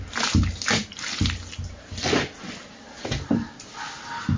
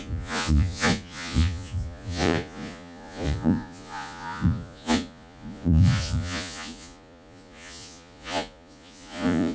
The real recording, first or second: first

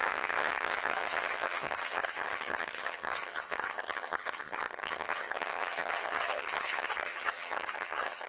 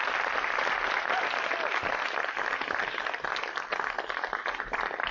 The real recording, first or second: second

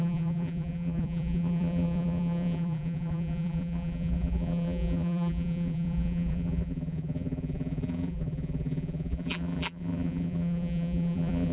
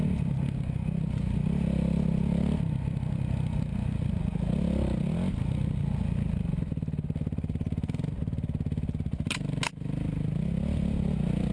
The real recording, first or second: second